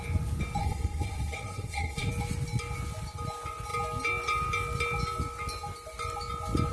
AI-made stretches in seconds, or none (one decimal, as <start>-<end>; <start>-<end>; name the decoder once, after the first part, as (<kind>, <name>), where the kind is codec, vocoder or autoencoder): 0.6-2.1 (codec, SNAC)